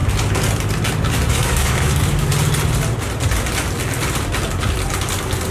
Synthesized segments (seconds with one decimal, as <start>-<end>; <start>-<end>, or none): 1.3-2.3